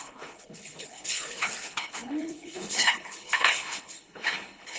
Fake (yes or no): yes